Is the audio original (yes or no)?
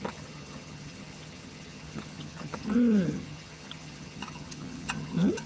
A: no